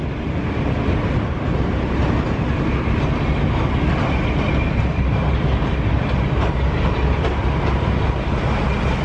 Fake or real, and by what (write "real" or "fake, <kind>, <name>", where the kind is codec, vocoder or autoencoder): real